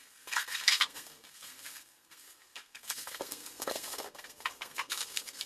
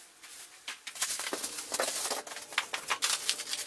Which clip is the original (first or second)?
second